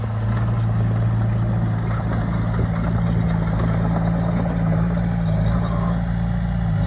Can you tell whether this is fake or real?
real